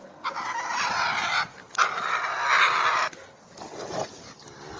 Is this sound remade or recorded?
recorded